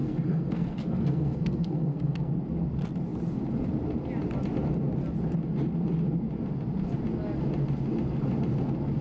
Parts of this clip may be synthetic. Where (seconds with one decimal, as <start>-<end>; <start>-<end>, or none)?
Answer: 0.0-2.3